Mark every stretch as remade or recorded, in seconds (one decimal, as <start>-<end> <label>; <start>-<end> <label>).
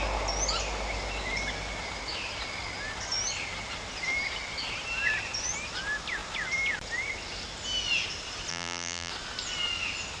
0.0-8.5 recorded; 8.5-9.1 remade; 9.1-10.2 recorded